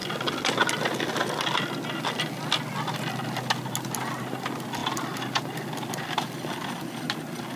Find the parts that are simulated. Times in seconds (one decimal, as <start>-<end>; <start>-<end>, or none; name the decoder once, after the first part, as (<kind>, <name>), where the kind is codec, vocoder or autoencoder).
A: none